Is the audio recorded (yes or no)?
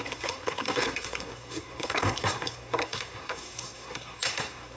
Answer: no